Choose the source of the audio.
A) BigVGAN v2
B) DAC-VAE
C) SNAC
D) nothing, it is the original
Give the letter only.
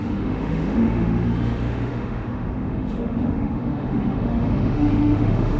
B